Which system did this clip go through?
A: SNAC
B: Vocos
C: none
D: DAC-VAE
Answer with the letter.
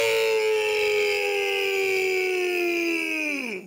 C